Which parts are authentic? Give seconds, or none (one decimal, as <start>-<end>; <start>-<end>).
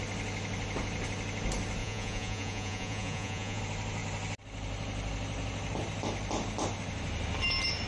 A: 0.0-1.8; 3.6-7.9